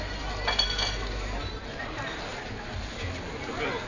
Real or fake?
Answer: real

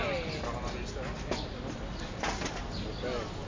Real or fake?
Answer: real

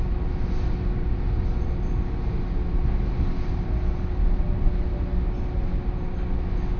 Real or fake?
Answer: real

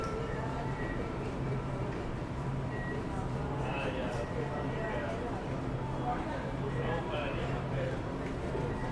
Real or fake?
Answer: fake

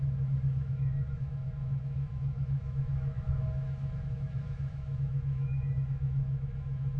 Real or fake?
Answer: fake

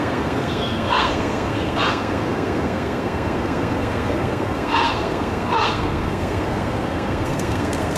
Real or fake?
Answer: fake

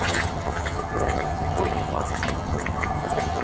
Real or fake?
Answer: fake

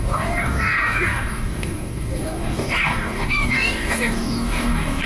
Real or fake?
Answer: fake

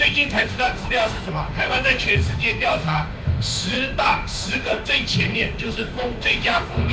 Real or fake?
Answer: fake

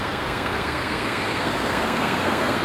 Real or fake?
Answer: fake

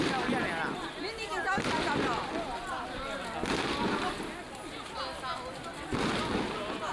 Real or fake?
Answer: real